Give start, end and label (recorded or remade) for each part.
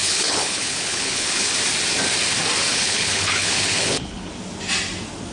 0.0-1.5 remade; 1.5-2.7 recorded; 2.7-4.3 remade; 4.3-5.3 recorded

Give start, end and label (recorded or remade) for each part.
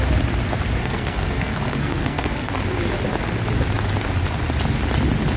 0.0-0.8 recorded; 0.8-2.5 remade; 2.5-5.4 recorded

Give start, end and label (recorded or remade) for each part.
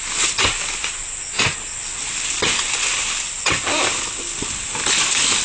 0.0-5.4 recorded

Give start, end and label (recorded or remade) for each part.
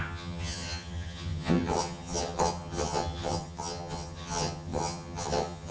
0.0-5.7 remade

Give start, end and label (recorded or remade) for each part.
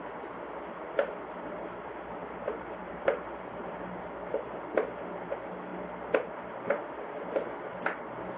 0.0-2.2 recorded; 2.2-4.0 remade; 4.0-8.4 recorded